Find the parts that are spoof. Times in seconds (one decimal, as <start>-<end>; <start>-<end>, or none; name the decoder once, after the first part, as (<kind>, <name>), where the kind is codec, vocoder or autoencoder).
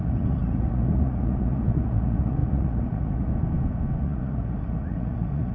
0.0-3.3 (vocoder, Vocos); 4.0-5.5